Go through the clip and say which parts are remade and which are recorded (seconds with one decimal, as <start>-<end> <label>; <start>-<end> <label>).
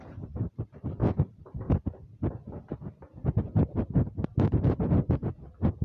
0.0-5.8 recorded